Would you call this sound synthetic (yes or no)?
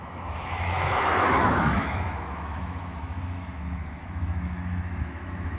yes